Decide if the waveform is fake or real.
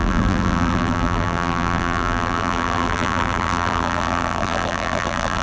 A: fake